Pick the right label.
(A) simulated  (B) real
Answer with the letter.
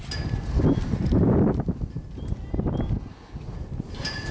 B